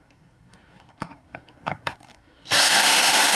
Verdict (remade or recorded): remade